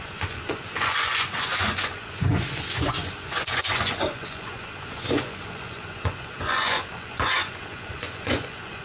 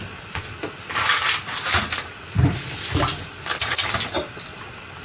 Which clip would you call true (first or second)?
second